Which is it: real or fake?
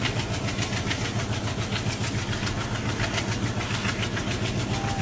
real